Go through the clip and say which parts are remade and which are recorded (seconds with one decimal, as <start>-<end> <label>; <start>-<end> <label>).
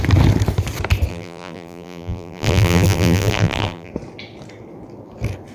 0.0-1.1 recorded; 1.1-3.9 remade; 3.9-5.5 recorded